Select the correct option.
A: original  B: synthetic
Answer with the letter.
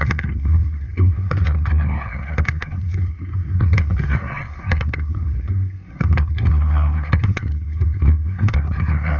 B